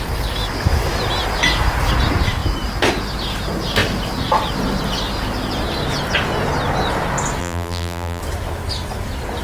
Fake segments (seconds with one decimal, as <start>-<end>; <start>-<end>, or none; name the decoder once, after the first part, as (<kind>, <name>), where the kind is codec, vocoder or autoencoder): 7.4-8.2 (vocoder, BigVGAN v2)

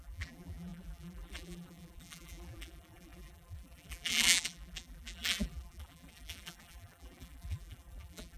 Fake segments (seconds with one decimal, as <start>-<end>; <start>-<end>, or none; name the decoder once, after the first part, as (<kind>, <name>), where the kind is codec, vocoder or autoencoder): 0.0-8.4 (vocoder, BigVGAN v2)

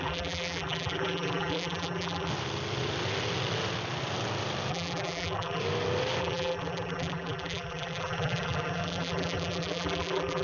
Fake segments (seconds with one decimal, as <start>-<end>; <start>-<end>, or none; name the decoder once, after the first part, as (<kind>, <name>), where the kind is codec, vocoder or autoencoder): 0.0-2.3 (vocoder, BigVGAN v2); 4.7-5.6; 6.2-10.4

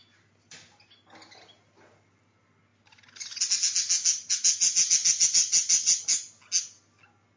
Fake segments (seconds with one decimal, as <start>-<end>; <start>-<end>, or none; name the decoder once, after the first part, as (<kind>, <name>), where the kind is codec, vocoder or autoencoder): none

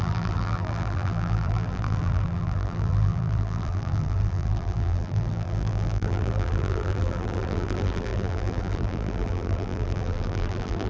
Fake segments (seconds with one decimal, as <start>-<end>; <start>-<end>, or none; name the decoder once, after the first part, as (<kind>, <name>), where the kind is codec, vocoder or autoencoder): 0.0-10.9 (vocoder, BigVGAN v2)

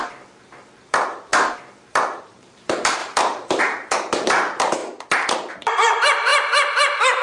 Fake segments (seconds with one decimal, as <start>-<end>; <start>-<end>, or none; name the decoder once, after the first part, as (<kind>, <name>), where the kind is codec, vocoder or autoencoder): 0.0-1.3 (vocoder, BigVGAN v2); 2.2-4.8; 5.5-6.3